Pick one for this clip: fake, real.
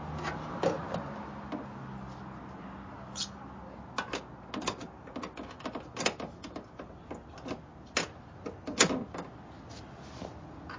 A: real